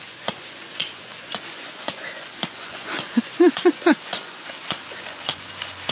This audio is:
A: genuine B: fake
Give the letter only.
B